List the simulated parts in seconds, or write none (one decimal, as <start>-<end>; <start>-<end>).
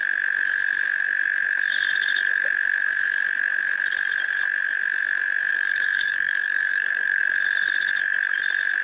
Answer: 5.5-7.2